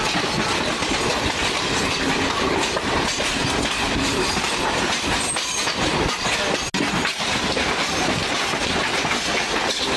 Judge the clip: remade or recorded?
recorded